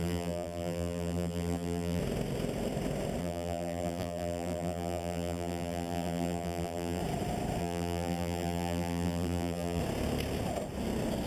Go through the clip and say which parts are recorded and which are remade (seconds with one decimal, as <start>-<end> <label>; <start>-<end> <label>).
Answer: 0.0-2.0 remade; 2.0-3.2 recorded; 3.2-7.0 remade; 7.0-7.6 recorded; 7.6-9.8 remade; 9.8-11.3 recorded